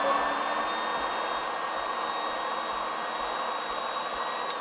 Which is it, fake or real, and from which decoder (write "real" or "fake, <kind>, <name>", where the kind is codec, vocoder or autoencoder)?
real